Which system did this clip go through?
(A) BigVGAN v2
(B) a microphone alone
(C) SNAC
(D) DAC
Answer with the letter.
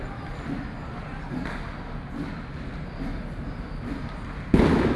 B